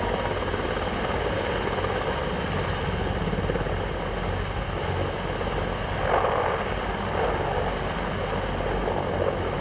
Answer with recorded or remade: recorded